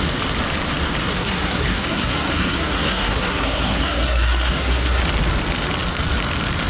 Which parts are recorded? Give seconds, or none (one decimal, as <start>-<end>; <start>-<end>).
0.0-1.0; 5.0-6.7